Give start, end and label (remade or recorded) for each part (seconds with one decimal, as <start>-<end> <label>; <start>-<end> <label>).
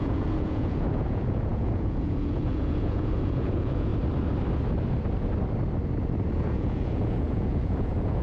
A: 0.0-3.9 remade; 3.9-6.3 recorded; 6.3-8.2 remade